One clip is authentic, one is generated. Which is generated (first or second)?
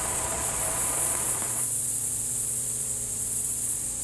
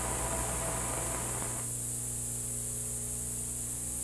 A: first